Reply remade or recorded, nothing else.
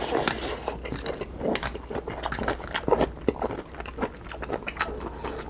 recorded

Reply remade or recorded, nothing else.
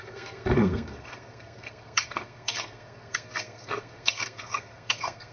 remade